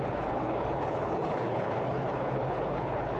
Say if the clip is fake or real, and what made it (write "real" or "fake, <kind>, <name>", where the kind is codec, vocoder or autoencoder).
fake, codec, HILCodec